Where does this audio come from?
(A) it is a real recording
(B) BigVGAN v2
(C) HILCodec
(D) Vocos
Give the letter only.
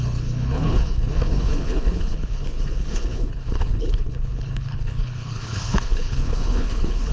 C